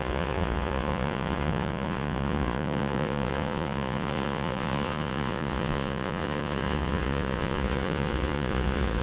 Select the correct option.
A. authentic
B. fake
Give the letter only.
B